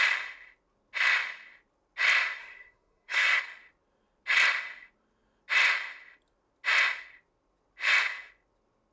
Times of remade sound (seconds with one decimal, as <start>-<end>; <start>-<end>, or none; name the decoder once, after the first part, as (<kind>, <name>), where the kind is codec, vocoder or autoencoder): 2.4-3.4 (codec, SNAC)